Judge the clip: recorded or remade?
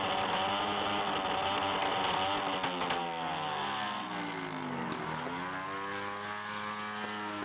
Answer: recorded